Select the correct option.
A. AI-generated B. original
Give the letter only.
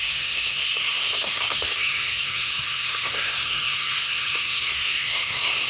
A